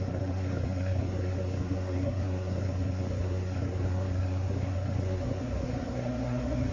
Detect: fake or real fake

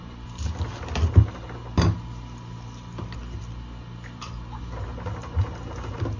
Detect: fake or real real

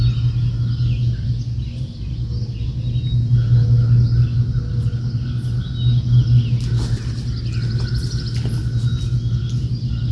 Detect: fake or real real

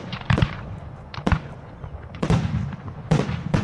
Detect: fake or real fake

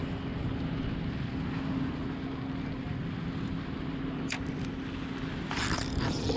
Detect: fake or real real